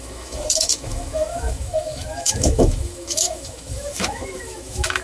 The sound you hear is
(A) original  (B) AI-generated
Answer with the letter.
B